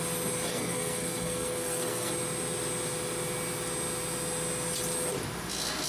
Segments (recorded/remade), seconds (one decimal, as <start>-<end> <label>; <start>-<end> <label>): 0.0-0.5 recorded; 0.5-2.1 remade; 2.1-5.9 recorded